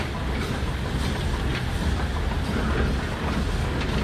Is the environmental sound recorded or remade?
recorded